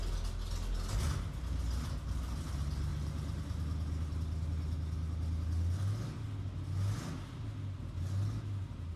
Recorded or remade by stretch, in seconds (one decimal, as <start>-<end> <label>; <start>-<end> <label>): 0.0-9.0 recorded